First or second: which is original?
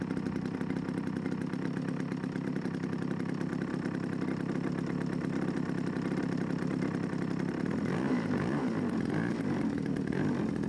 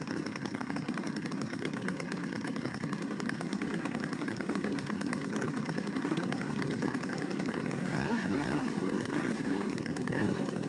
first